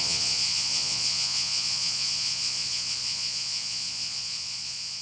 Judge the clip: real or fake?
fake